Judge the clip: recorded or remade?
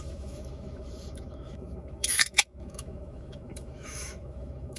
remade